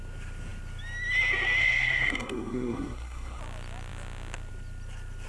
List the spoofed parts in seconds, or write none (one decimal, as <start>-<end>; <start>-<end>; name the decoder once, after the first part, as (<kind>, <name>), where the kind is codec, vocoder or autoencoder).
1.6-3.4 (codec, SNAC)